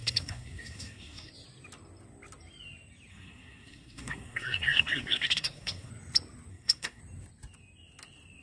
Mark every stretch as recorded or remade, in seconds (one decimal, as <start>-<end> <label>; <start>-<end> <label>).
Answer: 0.0-1.3 remade; 1.3-3.1 recorded; 3.1-5.9 remade; 5.9-6.5 recorded; 6.5-7.0 remade; 7.0-8.4 recorded